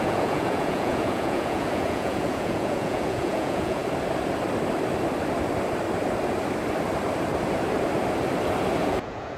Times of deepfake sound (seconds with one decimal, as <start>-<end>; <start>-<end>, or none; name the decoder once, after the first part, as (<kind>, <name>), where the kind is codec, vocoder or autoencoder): 0.0-3.8 (vocoder, Vocos); 8.9-9.4